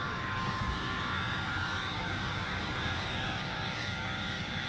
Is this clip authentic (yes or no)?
no